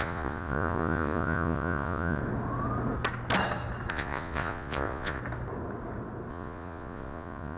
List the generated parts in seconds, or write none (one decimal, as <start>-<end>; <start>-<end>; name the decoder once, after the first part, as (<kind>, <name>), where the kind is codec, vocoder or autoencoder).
0.0-2.2 (vocoder, Vocos); 3.9-5.2; 6.3-7.6